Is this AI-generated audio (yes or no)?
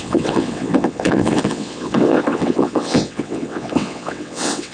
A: yes